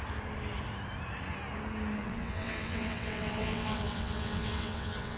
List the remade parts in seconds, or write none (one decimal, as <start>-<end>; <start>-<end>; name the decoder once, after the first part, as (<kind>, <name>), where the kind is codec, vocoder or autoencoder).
2.0-5.2 (vocoder, WaveNeXt)